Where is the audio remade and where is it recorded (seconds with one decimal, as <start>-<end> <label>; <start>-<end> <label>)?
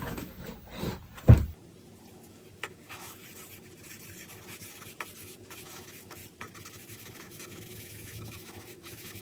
0.0-0.5 remade; 0.5-2.1 recorded; 2.1-3.2 remade; 3.2-5.2 recorded; 5.2-6.2 remade; 6.2-6.7 recorded; 6.7-9.2 remade